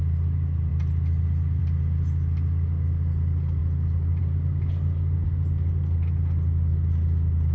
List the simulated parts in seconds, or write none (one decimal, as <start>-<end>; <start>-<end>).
none